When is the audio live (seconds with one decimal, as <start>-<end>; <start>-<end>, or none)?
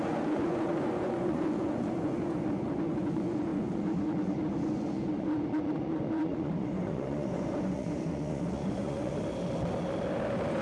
9.1-10.6